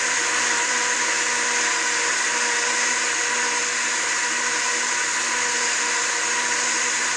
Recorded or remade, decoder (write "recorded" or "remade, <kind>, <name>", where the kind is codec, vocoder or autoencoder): recorded